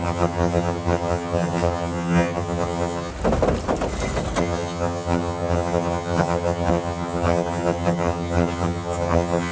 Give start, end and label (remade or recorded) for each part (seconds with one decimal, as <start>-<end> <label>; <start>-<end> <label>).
0.0-3.1 remade; 3.1-4.4 recorded; 4.4-9.5 remade